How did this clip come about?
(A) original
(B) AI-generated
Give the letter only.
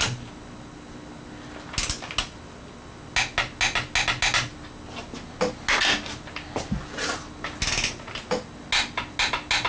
A